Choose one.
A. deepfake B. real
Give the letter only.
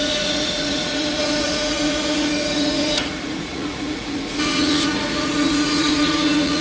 A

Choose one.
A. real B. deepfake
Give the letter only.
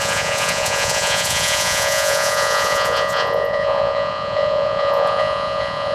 B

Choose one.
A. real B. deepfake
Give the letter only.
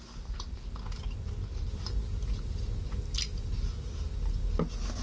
A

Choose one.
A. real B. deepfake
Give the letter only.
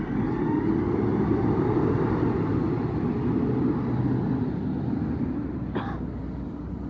A